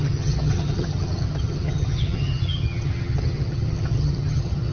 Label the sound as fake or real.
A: fake